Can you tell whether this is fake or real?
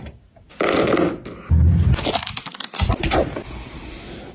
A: real